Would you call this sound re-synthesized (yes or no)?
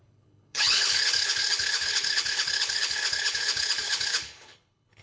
yes